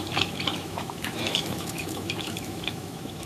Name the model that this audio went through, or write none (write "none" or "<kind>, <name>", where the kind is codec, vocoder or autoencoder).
autoencoder, DAC-VAE